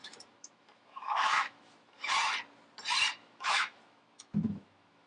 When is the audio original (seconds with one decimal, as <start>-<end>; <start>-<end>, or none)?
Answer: 2.1-3.2